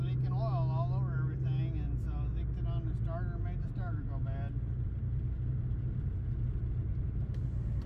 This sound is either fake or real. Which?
real